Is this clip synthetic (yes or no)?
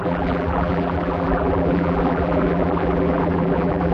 yes